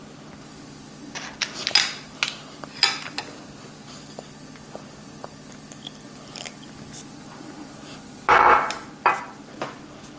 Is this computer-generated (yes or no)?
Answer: no